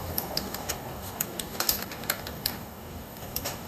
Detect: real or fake fake